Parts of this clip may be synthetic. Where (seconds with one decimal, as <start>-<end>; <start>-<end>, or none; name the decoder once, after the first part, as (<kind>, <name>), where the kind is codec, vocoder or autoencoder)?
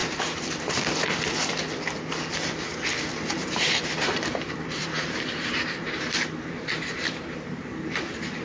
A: 0.0-0.9 (vocoder, BigVGAN v2); 3.4-8.4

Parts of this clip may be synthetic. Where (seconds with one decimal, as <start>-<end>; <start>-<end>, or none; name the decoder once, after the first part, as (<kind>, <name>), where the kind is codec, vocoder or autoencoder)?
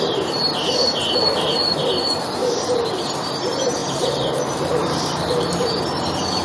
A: 2.4-3.0 (vocoder, BigVGAN v2); 3.8-5.8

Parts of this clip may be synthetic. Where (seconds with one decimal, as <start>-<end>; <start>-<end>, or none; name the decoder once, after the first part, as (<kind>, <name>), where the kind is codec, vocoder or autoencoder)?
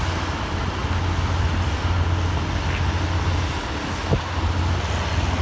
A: none